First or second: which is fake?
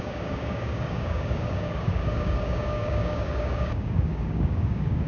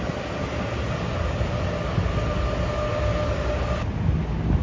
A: first